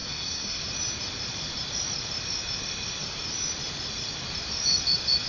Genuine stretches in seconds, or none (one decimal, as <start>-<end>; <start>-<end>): 0.6-5.3